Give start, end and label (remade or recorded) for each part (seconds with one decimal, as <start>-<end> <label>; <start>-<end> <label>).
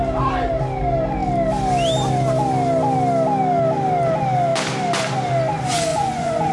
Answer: 0.0-5.9 recorded; 5.9-6.5 remade